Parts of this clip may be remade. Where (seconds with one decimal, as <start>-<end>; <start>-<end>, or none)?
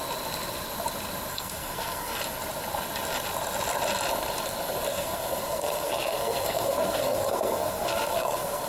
1.3-2.2; 4.9-8.7